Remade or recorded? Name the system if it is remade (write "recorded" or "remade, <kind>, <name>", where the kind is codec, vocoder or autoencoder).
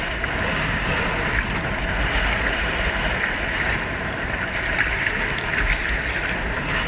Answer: recorded